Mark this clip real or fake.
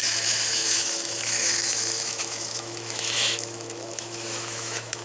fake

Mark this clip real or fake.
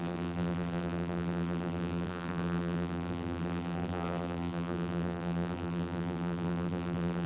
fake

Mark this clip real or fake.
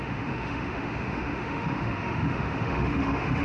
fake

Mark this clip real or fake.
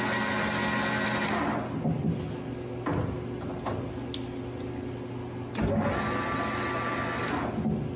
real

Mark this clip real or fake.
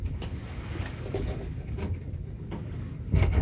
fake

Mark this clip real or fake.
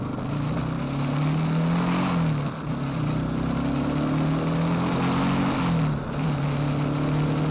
real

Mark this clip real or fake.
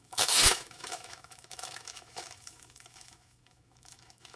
fake